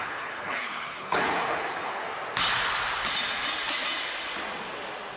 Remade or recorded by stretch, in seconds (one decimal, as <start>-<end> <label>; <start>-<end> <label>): 0.0-2.0 remade; 2.0-5.2 recorded